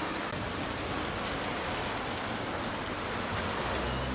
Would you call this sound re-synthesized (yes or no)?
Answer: no